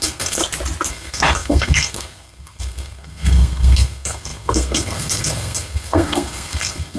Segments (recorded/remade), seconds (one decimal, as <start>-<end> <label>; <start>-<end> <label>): 0.0-0.4 remade; 0.4-0.9 recorded; 0.9-7.0 remade